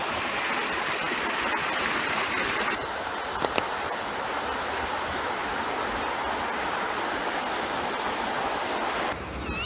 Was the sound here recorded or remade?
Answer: recorded